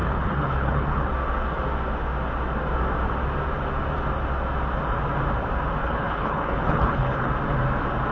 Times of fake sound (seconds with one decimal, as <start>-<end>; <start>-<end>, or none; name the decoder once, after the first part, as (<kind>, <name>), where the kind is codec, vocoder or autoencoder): 0.0-1.1 (codec, HILCodec); 5.8-7.3